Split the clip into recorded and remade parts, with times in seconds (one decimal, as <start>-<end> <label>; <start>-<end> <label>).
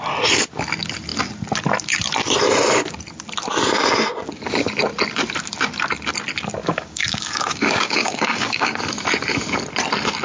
0.0-6.6 recorded; 6.6-8.8 remade; 8.8-10.2 recorded